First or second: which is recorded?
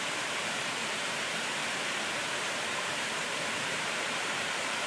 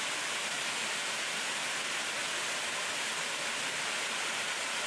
second